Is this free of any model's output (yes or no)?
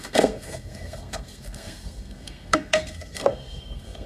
no